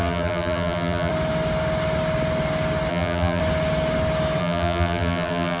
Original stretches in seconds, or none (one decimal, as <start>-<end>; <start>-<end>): 1.1-2.9; 3.4-4.4